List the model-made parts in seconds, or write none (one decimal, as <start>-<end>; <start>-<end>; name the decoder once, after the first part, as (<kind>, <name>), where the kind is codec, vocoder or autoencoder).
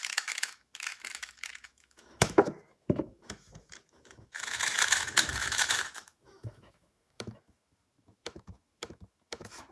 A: 0.0-9.7 (autoencoder, DAC-VAE)